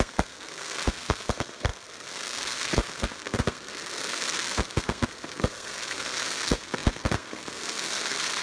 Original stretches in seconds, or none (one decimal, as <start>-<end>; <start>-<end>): none